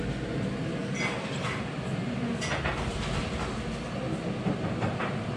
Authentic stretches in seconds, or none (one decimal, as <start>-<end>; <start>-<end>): 0.0-5.4